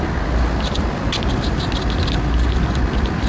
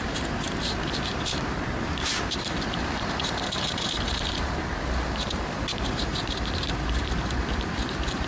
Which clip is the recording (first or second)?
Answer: first